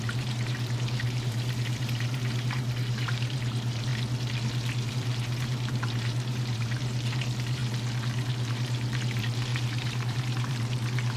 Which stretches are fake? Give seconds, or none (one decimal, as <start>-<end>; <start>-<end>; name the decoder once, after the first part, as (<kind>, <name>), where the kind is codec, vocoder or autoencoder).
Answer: 0.0-3.9 (vocoder, BigVGAN v2); 4.9-7.6; 8.3-11.2